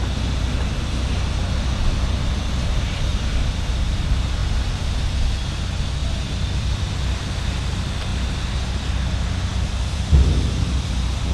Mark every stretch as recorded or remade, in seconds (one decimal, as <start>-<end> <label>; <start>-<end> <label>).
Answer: 0.0-4.4 recorded; 4.4-5.0 remade; 5.0-6.0 recorded; 6.0-7.2 remade; 7.2-9.5 recorded; 9.5-10.7 remade; 10.7-11.3 recorded